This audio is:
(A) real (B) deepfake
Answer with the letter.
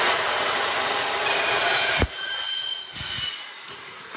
B